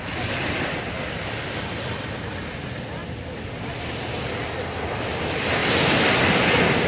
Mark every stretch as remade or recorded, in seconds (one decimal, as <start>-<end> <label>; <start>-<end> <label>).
0.0-3.0 recorded; 3.0-3.6 remade; 3.6-6.9 recorded